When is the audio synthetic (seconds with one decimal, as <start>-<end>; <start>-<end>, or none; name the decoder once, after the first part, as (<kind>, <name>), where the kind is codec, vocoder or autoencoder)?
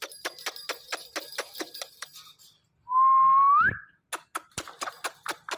none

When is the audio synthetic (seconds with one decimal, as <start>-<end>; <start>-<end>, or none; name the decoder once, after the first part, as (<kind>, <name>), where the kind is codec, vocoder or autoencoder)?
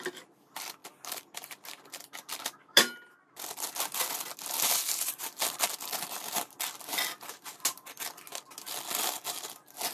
0.8-3.5 (vocoder, BigVGAN v2)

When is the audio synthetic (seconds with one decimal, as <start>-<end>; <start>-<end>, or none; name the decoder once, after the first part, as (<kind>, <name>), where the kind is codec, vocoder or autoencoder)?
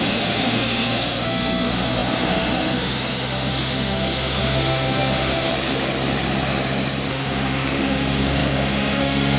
0.0-5.5 (autoencoder, DAC-VAE); 7.1-9.4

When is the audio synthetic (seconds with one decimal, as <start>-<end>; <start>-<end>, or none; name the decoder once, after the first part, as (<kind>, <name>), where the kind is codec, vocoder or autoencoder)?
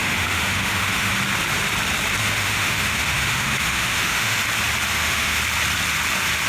0.0-1.1 (autoencoder, DAC-VAE); 2.2-4.4; 4.9-5.4